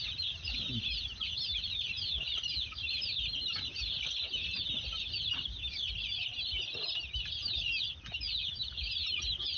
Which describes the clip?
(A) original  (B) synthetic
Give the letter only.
A